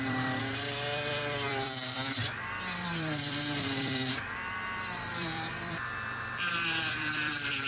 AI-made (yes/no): yes